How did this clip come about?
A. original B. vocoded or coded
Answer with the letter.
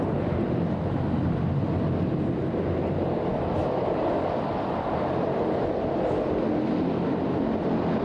A